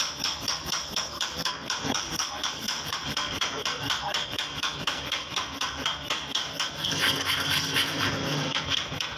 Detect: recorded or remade remade